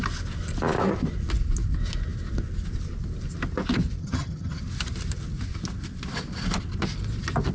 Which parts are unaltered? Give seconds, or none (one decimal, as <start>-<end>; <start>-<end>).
0.0-4.0; 4.6-7.5

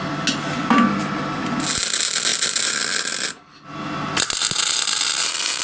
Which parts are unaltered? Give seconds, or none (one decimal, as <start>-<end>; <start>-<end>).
0.0-5.6

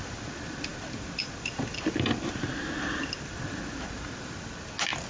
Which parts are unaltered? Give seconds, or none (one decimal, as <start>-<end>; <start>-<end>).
0.0-5.1

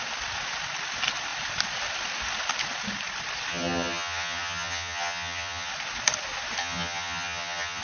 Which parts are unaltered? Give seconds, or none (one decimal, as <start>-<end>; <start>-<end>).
0.0-3.5; 5.7-6.6